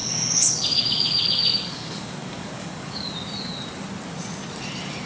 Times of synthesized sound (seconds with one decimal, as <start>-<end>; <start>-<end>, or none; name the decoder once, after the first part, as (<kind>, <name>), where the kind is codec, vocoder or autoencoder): 0.0-3.1 (codec, DAC)